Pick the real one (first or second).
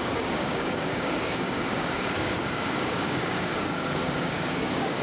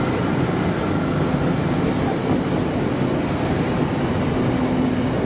second